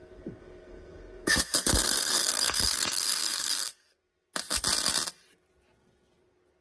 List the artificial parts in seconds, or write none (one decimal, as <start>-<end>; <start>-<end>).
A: 0.0-4.0